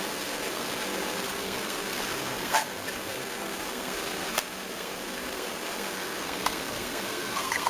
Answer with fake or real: fake